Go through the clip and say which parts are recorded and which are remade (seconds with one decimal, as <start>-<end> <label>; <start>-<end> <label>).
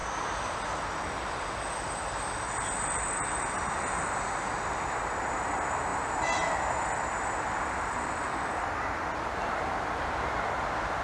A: 0.0-11.0 recorded